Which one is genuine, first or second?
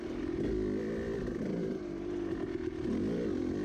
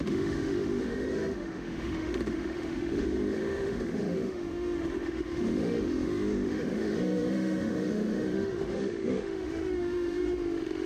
first